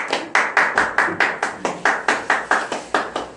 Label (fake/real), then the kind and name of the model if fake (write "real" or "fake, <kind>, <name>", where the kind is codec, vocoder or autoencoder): real